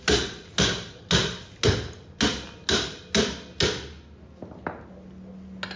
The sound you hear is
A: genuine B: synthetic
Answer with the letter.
A